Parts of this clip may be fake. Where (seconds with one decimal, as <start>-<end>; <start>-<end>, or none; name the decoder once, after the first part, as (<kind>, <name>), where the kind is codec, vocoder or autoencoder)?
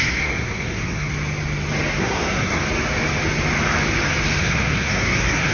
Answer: 0.0-1.1 (codec, SNAC); 2.0-2.6; 4.4-5.5